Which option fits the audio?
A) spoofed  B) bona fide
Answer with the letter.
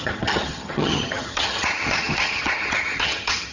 A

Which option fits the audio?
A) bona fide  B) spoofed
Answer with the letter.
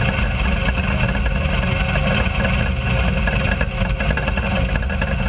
A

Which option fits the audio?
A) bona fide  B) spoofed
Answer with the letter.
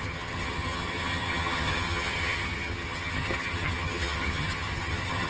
B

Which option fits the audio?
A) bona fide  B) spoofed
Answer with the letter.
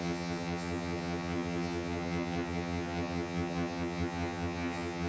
B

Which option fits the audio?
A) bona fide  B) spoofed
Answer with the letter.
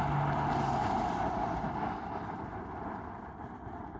A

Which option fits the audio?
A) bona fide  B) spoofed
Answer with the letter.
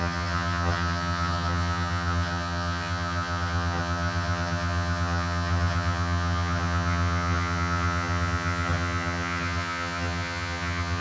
B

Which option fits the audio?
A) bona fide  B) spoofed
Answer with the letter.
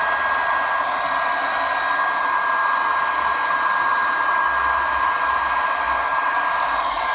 A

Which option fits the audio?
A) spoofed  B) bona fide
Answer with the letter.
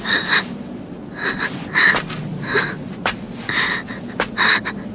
B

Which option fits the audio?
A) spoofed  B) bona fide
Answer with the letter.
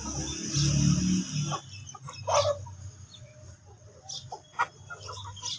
B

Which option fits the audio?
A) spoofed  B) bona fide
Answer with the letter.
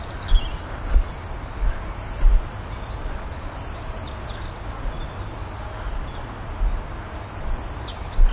B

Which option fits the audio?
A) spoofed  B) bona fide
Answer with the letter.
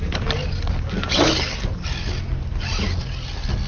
B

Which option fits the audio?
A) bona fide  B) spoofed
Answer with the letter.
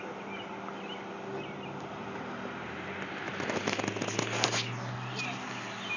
A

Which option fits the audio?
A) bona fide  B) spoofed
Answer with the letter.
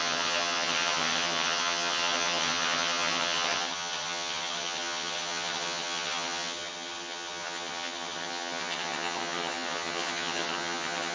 B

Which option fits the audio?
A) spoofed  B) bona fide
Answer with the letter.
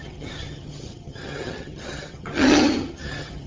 A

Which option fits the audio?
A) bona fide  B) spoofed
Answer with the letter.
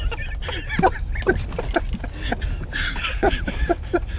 A